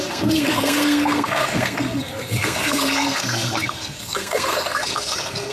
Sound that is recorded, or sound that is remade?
remade